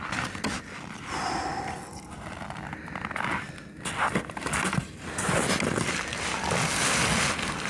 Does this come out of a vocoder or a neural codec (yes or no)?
no